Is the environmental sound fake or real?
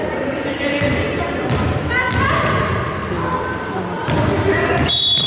real